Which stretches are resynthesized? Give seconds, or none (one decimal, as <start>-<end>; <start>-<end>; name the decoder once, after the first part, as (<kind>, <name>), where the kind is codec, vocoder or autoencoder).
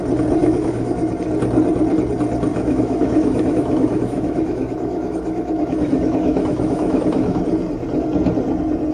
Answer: 0.4-1.1 (autoencoder, DAC-VAE); 2.5-7.4